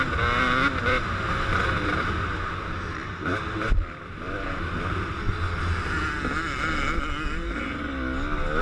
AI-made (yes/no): no